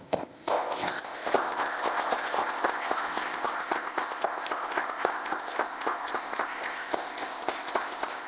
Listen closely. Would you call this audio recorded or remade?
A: remade